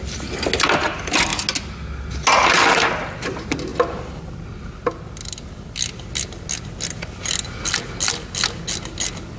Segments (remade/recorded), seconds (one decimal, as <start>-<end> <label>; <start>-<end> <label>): 0.0-9.4 recorded